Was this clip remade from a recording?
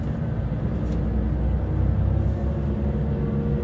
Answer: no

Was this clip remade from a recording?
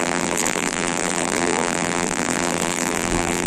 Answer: yes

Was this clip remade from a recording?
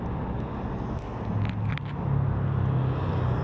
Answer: no